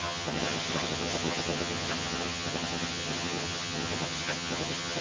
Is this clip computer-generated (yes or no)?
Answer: yes